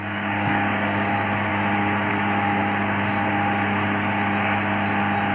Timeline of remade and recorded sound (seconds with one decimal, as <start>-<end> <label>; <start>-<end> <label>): 0.0-1.1 remade; 1.1-5.3 recorded